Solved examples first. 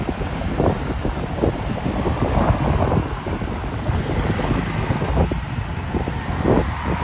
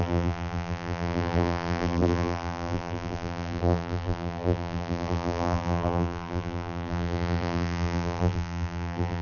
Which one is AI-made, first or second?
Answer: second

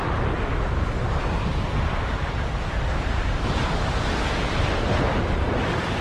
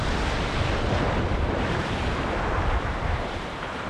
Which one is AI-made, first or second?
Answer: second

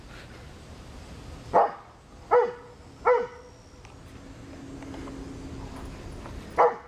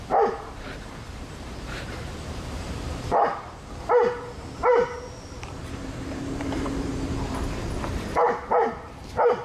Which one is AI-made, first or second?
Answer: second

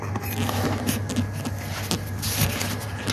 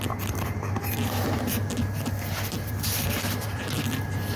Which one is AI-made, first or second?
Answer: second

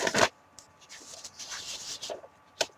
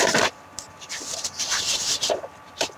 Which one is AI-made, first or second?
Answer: second